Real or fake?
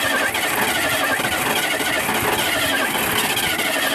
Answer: real